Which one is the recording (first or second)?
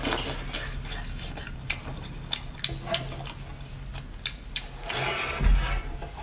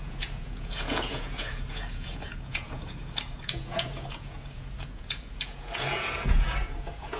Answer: first